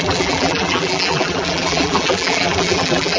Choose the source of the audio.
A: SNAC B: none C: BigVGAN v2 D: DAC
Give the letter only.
C